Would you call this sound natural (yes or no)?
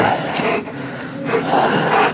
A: yes